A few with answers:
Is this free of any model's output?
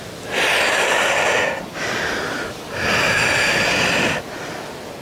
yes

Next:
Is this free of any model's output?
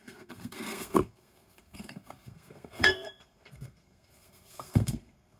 no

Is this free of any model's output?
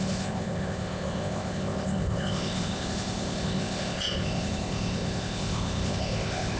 no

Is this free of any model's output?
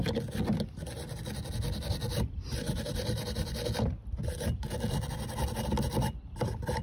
yes